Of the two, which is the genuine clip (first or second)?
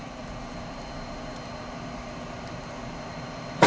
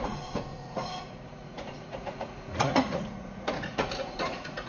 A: first